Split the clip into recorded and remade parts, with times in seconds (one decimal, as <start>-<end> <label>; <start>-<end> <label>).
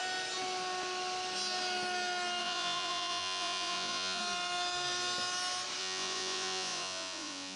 0.0-2.4 recorded; 2.4-4.2 remade; 4.2-5.8 recorded; 5.8-7.6 remade